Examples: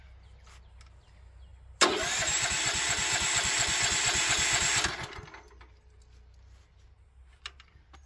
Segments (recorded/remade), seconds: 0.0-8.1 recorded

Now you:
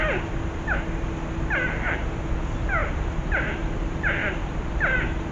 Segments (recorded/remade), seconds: 0.0-2.8 recorded; 2.8-3.5 remade; 3.5-4.2 recorded; 4.2-4.7 remade; 4.7-5.3 recorded

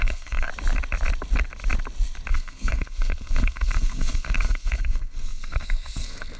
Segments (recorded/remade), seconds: 0.0-0.5 remade; 0.5-2.3 recorded; 2.3-6.4 remade

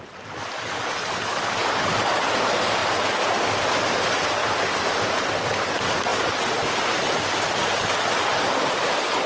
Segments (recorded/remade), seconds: 0.0-9.3 recorded